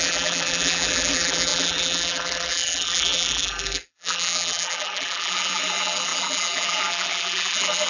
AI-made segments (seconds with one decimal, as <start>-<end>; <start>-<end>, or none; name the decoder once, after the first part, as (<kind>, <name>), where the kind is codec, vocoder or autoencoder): 0.0-7.9 (vocoder, BigVGAN v2)